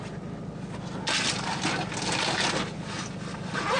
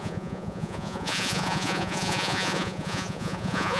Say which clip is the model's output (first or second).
second